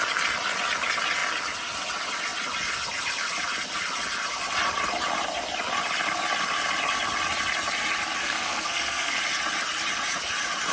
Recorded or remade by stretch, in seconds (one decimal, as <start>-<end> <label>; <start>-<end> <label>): 0.0-8.2 recorded; 8.2-9.2 remade; 9.2-10.7 recorded